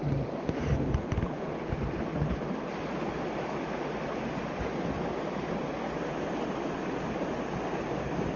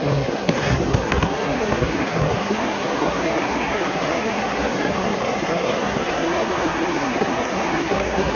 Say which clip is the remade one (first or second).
second